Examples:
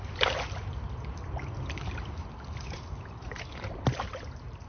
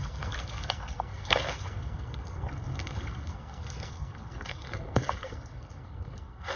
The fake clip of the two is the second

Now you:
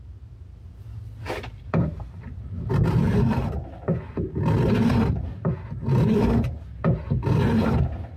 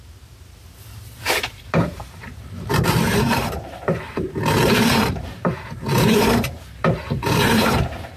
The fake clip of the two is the second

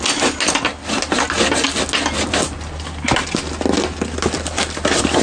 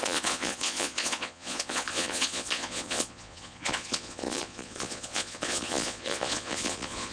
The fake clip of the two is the second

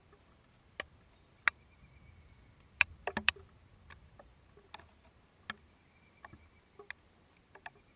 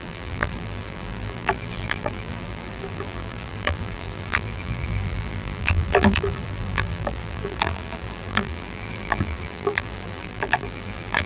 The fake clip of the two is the second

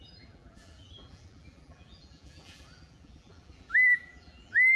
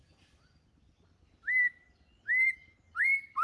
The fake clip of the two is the first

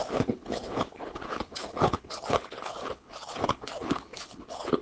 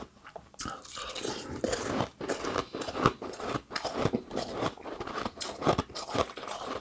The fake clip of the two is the first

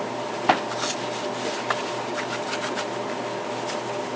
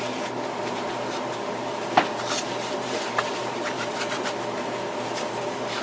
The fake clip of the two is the second